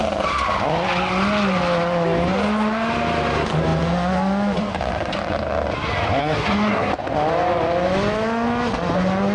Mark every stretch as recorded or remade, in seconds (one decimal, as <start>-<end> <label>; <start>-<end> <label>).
0.0-6.2 recorded; 6.2-6.9 remade; 6.9-9.3 recorded

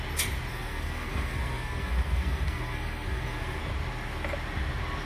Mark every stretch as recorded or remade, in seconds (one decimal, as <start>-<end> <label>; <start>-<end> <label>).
0.0-0.5 recorded; 0.5-3.6 remade; 3.6-5.1 recorded

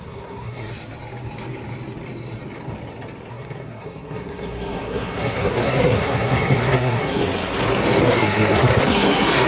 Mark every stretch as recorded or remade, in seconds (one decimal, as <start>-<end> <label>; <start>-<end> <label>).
0.0-0.7 remade; 0.7-3.3 recorded; 3.3-7.2 remade; 7.2-8.0 recorded; 8.0-9.5 remade